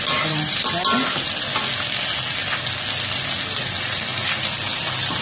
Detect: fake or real real